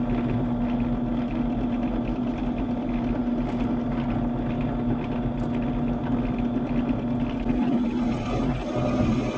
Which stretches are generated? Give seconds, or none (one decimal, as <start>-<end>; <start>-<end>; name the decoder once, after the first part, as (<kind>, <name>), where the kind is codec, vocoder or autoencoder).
none